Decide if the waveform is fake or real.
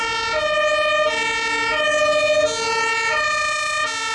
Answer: real